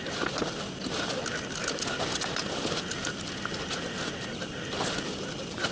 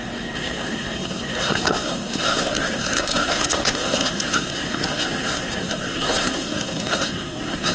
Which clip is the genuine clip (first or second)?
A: first